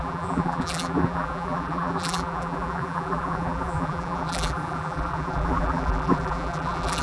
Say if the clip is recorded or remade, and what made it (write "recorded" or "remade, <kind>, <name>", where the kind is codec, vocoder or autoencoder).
remade, vocoder, BigVGAN v2